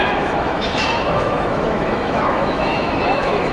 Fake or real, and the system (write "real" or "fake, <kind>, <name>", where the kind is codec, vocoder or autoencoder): fake, autoencoder, DAC-VAE